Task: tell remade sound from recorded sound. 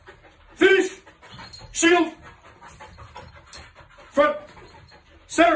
recorded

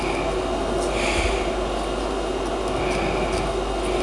recorded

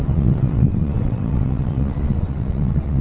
remade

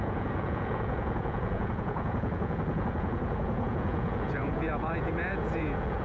remade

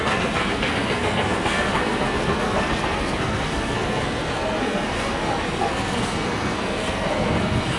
remade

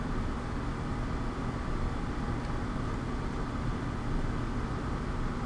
recorded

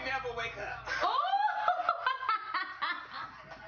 recorded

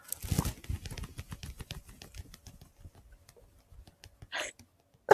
recorded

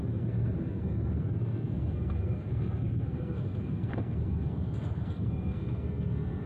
remade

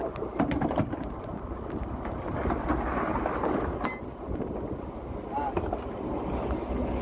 recorded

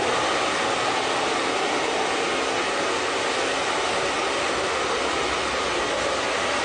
recorded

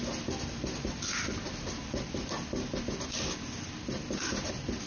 recorded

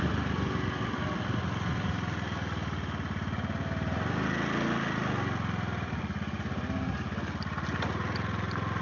recorded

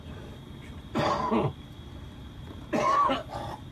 recorded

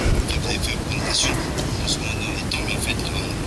recorded